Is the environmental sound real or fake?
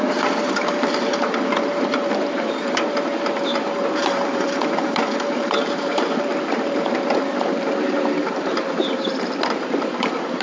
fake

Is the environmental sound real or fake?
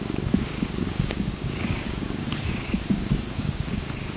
fake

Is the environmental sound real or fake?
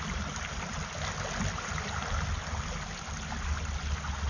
real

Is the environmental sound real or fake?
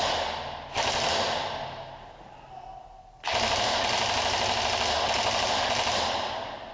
real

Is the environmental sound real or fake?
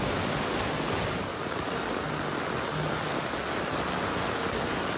real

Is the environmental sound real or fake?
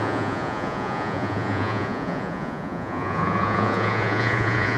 fake